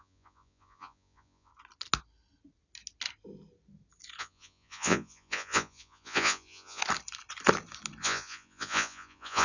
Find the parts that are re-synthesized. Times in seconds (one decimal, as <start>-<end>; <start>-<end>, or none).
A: 0.0-1.5; 4.2-6.8; 8.0-9.4